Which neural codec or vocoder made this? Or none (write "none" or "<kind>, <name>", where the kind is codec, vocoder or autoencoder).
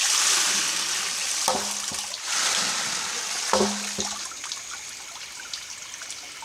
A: none